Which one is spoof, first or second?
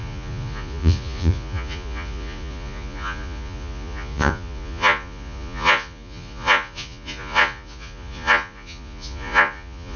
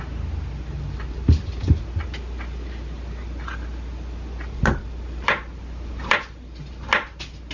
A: first